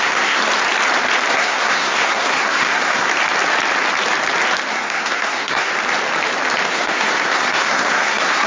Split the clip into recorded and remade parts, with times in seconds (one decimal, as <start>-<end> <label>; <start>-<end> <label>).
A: 0.0-0.4 remade; 0.4-1.3 recorded; 1.3-3.1 remade; 3.1-4.7 recorded; 4.7-5.7 remade; 5.7-6.7 recorded; 6.7-8.5 remade